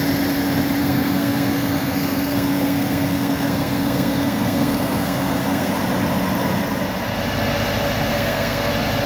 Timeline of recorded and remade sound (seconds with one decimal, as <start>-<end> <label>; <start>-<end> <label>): 0.0-0.8 recorded; 0.8-5.7 remade; 5.7-8.1 recorded; 8.1-8.7 remade; 8.7-9.1 recorded